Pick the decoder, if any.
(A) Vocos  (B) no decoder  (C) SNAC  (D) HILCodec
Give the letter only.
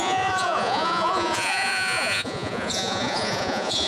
A